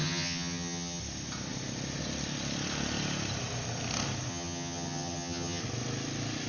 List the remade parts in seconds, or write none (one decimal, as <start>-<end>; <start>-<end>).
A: 0.0-1.0; 4.3-5.6